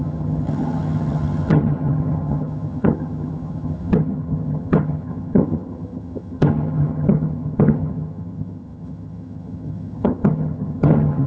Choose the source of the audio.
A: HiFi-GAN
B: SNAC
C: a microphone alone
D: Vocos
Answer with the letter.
A